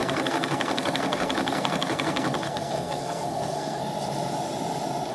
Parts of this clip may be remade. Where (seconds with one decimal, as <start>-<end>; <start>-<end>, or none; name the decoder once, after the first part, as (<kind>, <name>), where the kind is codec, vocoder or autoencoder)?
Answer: 0.0-3.8 (codec, SNAC)